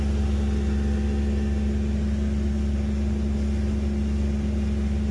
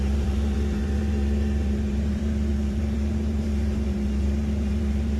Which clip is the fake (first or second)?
second